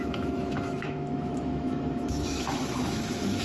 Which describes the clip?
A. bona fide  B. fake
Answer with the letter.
B